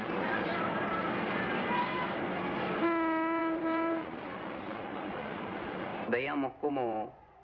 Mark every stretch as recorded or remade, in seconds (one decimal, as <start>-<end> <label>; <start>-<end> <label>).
0.0-0.5 remade; 0.5-3.4 recorded; 3.4-5.9 remade; 5.9-6.7 recorded; 6.7-7.4 remade

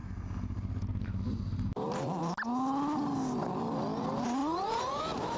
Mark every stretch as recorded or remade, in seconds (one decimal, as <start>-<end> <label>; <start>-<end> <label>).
0.0-4.4 recorded; 4.4-5.0 remade; 5.0-5.4 recorded

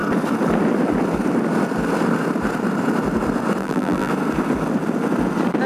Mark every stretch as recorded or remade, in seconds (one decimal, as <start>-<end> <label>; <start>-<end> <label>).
0.0-3.6 recorded; 3.6-4.1 remade; 4.1-5.7 recorded

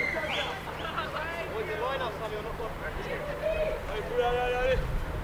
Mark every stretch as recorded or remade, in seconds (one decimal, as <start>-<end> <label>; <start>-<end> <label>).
0.0-1.1 remade; 1.1-2.3 recorded; 2.3-3.8 remade; 3.8-5.2 recorded

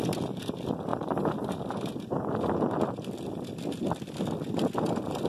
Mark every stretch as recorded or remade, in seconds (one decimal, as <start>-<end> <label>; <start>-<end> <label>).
0.0-5.3 recorded